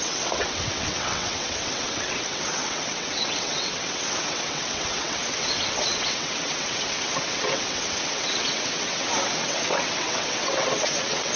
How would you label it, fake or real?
fake